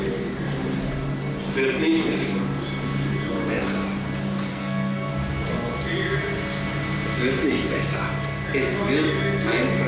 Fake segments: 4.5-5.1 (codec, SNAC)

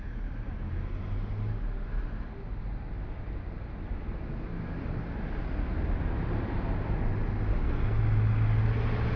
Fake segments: 7.5-8.0 (codec, SNAC)